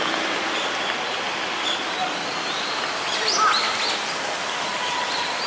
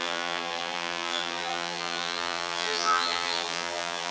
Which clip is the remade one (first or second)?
second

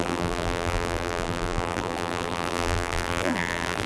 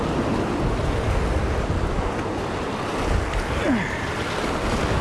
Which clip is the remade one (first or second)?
first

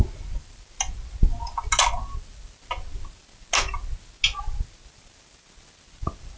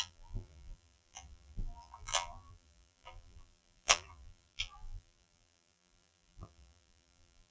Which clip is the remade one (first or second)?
second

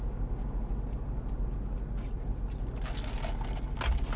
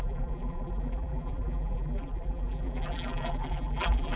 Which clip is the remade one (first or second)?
second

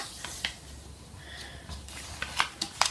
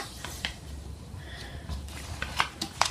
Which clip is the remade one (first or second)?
second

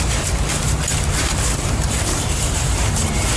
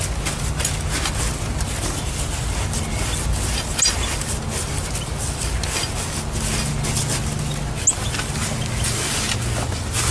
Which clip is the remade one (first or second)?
first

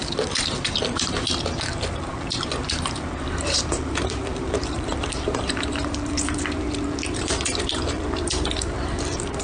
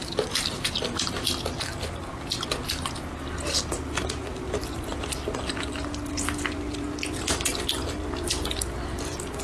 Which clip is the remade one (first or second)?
first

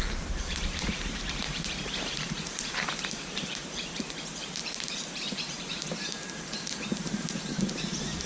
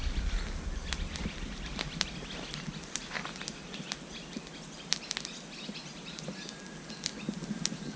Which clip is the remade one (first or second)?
first